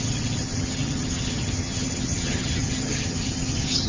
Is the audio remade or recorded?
remade